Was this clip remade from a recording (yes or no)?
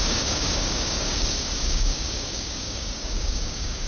yes